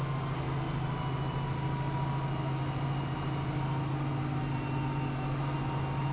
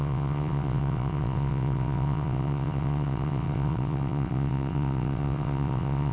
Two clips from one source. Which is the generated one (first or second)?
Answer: second